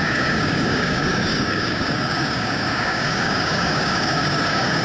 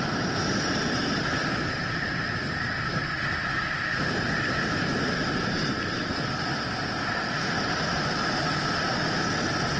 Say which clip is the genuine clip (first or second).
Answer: second